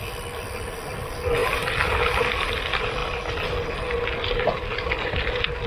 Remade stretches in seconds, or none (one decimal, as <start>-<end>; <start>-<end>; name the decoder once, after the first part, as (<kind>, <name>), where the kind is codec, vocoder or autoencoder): 1.4-2.2 (vocoder, BigVGAN v2)